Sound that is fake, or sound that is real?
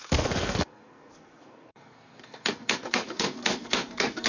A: fake